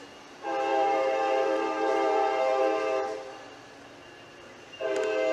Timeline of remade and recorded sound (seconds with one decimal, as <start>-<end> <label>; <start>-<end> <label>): 0.0-0.7 recorded; 0.7-2.6 remade; 2.6-5.3 recorded